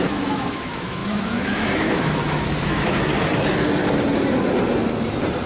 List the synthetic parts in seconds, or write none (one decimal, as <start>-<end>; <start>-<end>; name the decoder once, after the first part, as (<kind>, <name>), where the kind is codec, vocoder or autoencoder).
0.0-3.1 (autoencoder, DAC-VAE)